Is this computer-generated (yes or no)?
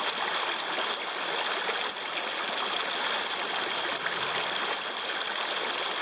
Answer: no